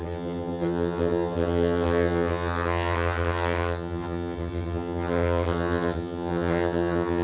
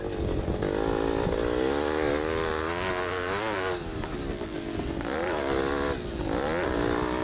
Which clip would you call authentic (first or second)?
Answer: second